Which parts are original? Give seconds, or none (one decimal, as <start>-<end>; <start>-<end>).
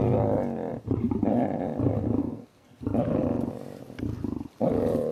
0.0-2.2; 2.8-5.1